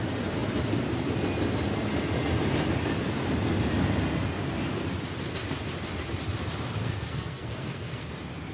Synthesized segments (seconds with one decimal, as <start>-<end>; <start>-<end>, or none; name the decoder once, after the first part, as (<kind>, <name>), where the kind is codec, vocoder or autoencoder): 6.8-8.1 (codec, SNAC)